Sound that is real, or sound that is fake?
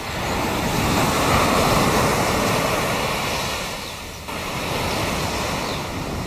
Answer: real